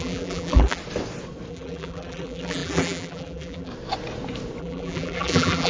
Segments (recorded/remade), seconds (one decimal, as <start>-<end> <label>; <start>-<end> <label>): 0.0-0.8 remade; 0.8-1.5 recorded; 1.5-3.7 remade; 3.7-4.6 recorded; 4.6-5.7 remade